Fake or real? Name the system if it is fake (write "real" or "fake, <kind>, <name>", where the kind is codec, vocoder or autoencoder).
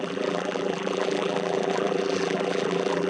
fake, vocoder, BigVGAN v2